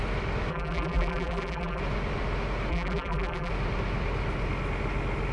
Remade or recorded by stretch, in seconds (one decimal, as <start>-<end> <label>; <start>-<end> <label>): 0.0-0.5 recorded; 0.5-1.8 remade; 1.8-2.7 recorded; 2.7-3.5 remade; 3.5-5.3 recorded